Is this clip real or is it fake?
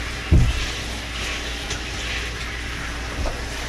real